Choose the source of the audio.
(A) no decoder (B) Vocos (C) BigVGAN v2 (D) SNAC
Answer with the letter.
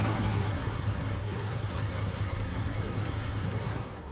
D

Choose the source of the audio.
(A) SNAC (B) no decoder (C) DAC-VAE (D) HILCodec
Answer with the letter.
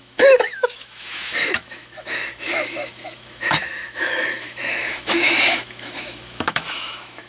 C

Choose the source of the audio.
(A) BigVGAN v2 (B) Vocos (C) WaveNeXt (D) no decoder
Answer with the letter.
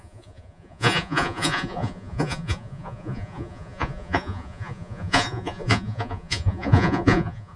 B